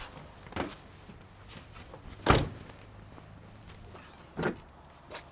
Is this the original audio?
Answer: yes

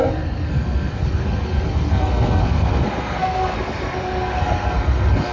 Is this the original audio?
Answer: no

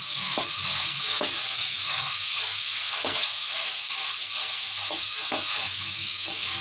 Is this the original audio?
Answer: no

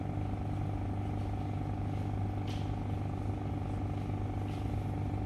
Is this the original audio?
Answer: yes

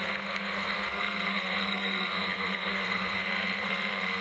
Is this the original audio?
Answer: no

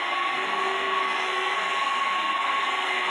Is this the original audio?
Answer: no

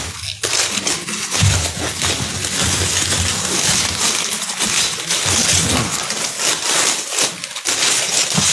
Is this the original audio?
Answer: yes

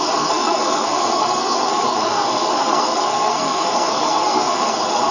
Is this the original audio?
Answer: no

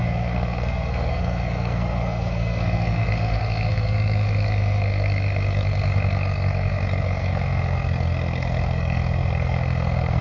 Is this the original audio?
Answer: no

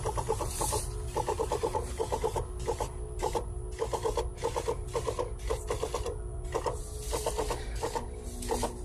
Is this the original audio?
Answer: yes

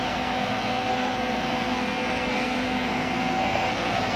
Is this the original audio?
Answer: no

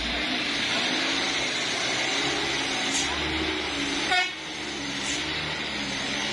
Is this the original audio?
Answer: yes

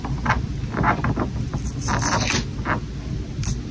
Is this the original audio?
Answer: yes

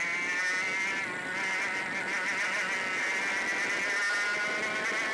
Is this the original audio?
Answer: yes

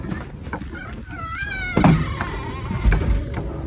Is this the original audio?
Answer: yes